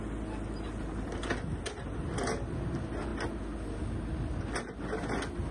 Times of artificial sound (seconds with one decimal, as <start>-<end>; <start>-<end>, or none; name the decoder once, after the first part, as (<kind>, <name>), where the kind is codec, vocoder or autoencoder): none